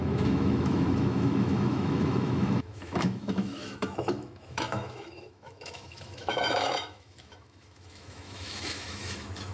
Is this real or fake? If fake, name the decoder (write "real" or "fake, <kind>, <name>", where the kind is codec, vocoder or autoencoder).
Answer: fake, autoencoder, DAC-VAE